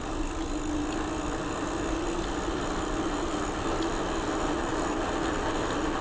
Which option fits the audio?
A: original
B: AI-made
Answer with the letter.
A